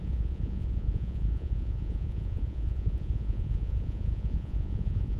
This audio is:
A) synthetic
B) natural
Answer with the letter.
A